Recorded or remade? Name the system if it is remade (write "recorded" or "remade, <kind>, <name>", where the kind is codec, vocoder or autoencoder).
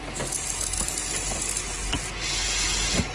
recorded